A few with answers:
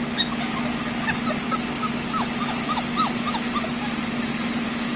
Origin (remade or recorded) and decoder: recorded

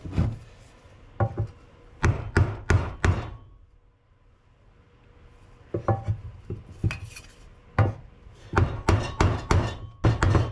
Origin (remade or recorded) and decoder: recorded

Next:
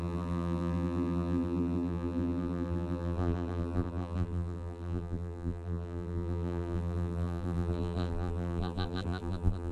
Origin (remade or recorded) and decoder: remade, vocoder, BigVGAN v2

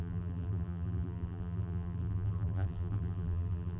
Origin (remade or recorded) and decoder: remade, vocoder, BigVGAN v2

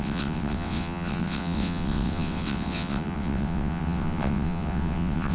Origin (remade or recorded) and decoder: remade, vocoder, WaveNeXt